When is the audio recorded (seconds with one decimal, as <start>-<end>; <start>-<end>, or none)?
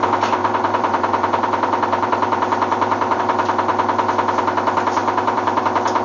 0.0-0.4; 3.2-5.0; 5.6-6.0